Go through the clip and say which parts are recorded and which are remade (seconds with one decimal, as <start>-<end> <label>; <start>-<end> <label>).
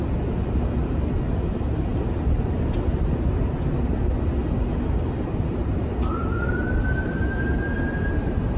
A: 0.0-8.6 recorded